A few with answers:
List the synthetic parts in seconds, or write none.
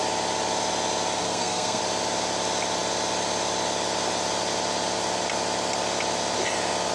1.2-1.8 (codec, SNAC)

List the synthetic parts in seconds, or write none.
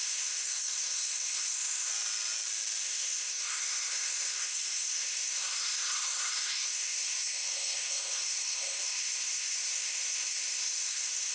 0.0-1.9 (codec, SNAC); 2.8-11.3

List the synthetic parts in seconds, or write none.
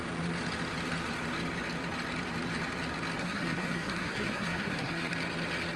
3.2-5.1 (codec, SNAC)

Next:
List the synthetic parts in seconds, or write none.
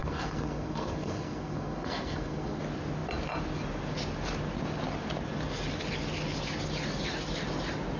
0.0-2.6 (codec, SNAC)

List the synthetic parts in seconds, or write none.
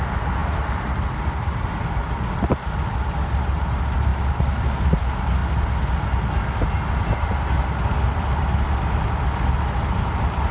none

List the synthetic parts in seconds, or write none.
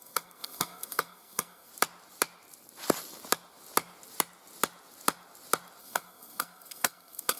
0.0-1.7 (codec, SNAC); 5.8-7.4